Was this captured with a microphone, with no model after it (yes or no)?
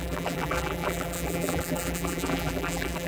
no